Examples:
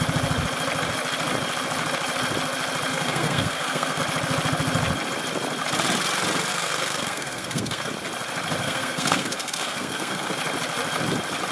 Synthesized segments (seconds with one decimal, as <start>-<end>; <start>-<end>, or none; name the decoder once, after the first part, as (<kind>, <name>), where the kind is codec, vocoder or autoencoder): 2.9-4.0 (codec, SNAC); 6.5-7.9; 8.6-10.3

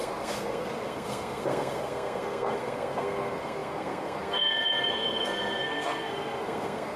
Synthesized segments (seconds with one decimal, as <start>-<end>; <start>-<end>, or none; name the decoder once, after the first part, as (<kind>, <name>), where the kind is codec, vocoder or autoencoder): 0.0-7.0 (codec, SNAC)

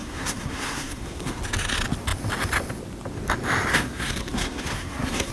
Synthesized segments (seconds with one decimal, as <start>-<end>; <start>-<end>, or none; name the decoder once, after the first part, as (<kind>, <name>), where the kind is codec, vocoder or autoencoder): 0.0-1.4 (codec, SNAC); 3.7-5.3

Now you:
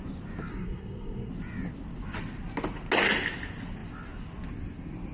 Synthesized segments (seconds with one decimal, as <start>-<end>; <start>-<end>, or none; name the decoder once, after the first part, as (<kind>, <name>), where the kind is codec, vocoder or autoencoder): 0.5-1.3 (codec, SNAC)

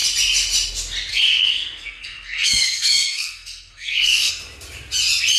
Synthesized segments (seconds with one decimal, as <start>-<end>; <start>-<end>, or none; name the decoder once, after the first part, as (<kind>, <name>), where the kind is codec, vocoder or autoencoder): 1.1-4.3 (codec, SNAC)

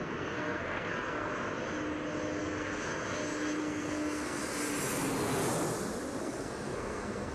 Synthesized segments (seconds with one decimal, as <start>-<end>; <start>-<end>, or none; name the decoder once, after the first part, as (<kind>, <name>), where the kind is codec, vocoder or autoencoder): 0.0-1.3 (codec, SNAC); 2.4-2.9; 3.6-4.4; 6.2-7.3